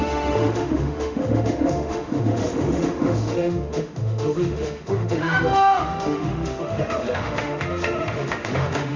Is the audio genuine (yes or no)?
no